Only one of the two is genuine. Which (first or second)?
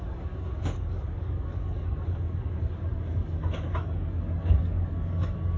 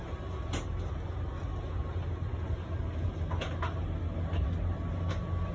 second